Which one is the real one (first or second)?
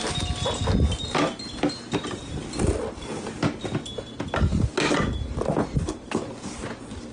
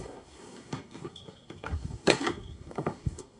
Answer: first